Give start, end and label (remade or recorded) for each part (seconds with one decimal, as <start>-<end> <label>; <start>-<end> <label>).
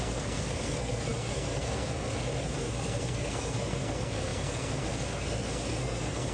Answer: 0.0-6.3 remade